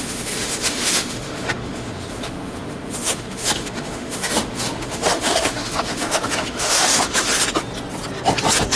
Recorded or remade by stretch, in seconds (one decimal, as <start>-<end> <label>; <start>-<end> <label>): 0.0-7.3 remade; 7.3-8.8 recorded